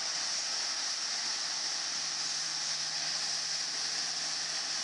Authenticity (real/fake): real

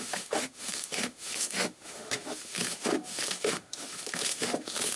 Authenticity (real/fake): fake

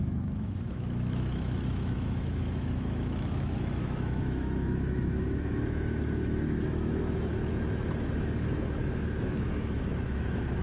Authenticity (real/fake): fake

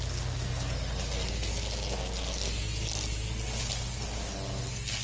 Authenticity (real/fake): real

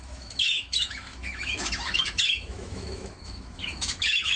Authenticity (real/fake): fake